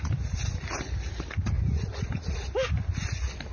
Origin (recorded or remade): recorded